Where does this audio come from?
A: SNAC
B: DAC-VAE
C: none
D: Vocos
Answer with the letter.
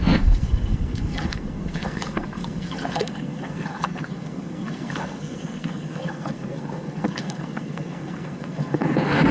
A